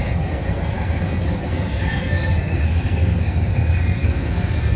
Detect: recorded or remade remade